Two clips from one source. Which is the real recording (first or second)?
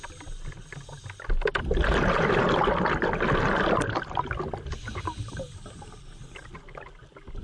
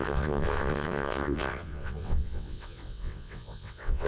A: first